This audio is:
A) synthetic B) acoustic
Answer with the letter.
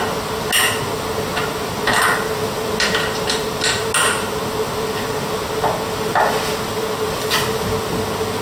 B